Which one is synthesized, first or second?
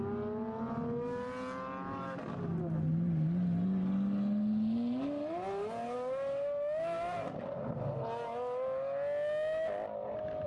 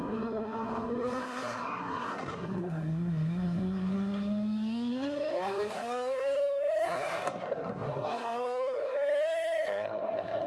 second